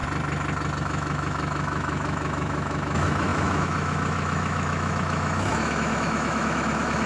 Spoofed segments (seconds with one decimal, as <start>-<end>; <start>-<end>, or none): 0.8-7.1